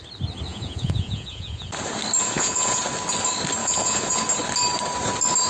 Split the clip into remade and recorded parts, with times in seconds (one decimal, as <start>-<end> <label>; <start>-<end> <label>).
0.0-0.5 recorded; 0.5-1.7 remade; 1.7-2.2 recorded; 2.2-2.8 remade; 2.8-3.6 recorded; 3.6-4.2 remade; 4.2-5.5 recorded